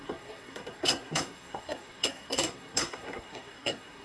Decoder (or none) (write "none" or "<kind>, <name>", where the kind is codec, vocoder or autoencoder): codec, SNAC